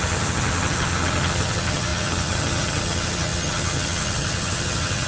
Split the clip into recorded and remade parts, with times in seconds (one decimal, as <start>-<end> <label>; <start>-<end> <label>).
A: 0.0-5.1 remade